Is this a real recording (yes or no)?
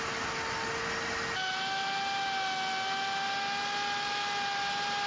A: yes